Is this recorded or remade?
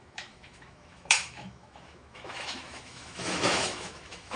remade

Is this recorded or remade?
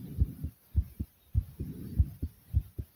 recorded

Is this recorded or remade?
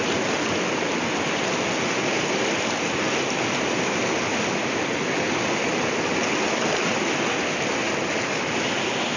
recorded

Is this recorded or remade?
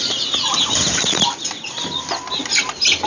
recorded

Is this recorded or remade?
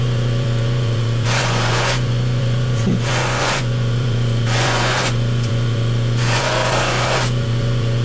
remade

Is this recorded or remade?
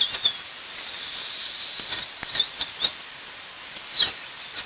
recorded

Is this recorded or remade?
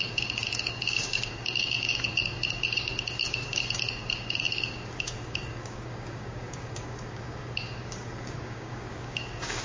remade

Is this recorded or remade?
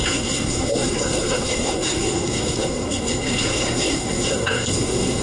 remade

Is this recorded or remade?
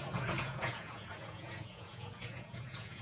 remade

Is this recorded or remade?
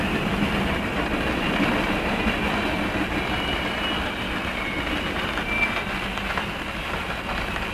recorded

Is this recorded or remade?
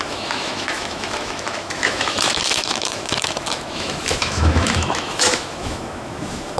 remade